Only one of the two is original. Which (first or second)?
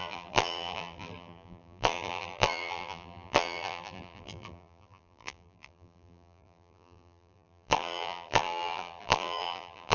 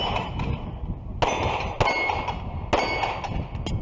second